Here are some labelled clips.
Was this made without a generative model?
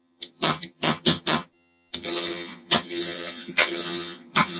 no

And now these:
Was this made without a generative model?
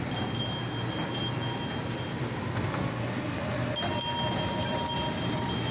yes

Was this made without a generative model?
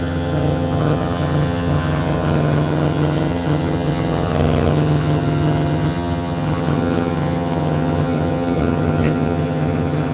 no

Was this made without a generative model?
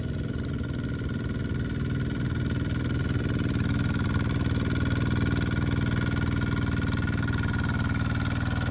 yes